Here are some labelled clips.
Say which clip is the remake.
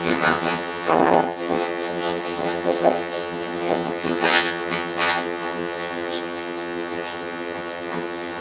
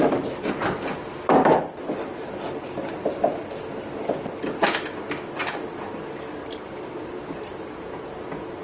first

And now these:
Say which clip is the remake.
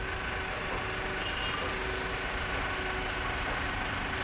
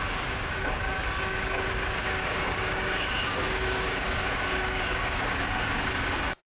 second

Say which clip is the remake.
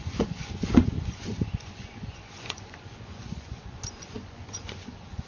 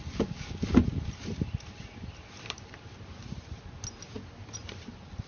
first